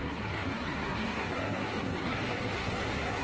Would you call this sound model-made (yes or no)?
yes